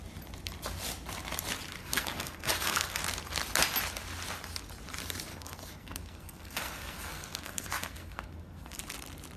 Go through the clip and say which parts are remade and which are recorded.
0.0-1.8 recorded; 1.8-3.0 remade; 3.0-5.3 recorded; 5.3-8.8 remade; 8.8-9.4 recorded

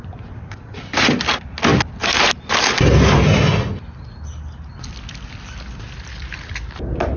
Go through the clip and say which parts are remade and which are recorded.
0.0-7.2 recorded

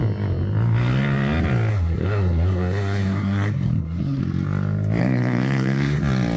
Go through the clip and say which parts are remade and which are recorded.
0.0-1.7 recorded; 1.7-4.2 remade; 4.2-5.0 recorded; 5.0-6.0 remade; 6.0-6.4 recorded

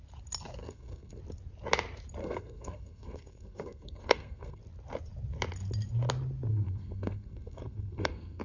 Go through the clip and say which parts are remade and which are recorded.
0.0-0.6 recorded; 0.6-1.2 remade; 1.2-2.2 recorded; 2.2-4.6 remade; 4.6-6.5 recorded; 6.5-8.4 remade